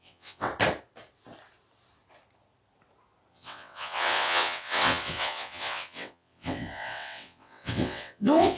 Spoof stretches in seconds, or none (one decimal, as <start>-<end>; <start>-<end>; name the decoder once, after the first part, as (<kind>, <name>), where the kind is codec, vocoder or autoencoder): 0.0-0.5 (vocoder, WaveNeXt); 3.3-8.6